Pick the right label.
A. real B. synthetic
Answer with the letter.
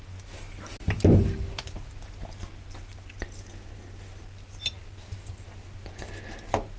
A